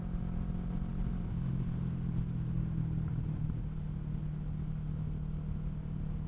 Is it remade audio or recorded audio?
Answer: recorded